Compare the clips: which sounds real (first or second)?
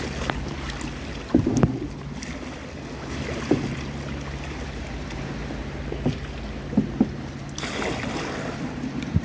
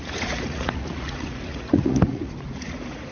first